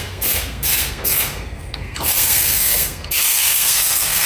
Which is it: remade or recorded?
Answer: remade